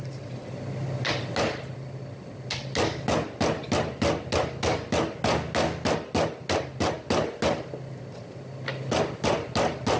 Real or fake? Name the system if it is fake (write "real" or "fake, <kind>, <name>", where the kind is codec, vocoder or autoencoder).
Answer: real